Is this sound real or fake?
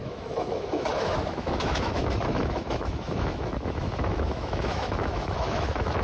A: fake